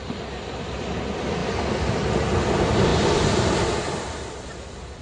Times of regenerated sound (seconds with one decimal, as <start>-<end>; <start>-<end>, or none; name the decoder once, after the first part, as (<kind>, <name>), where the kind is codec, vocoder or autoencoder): none